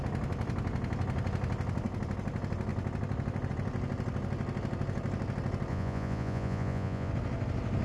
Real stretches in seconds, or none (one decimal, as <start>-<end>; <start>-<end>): 0.0-5.7; 7.1-7.8